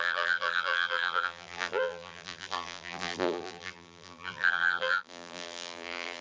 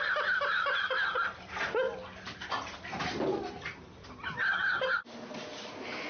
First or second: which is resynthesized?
first